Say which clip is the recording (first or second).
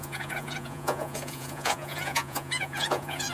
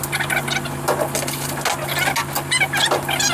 second